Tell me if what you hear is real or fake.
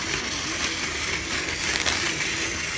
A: real